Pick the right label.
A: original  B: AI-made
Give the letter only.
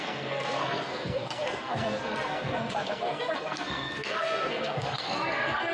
B